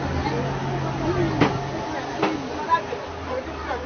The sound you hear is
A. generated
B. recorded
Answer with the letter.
B